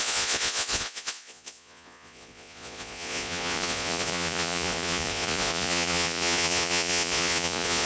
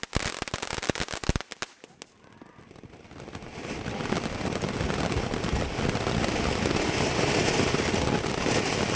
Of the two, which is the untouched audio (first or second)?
second